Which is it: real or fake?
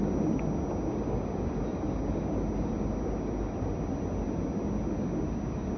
real